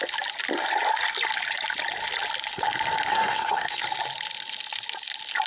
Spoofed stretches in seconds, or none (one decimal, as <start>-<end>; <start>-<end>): 3.1-3.8